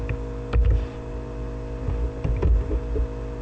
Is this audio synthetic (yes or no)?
no